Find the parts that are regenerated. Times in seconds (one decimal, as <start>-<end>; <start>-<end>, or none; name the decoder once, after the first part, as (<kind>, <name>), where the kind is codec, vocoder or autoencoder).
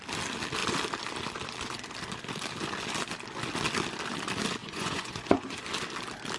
4.6-5.6 (vocoder, Vocos)